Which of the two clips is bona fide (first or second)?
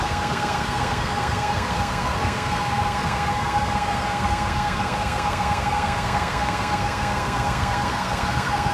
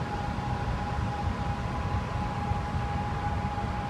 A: second